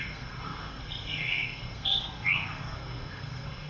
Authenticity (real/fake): fake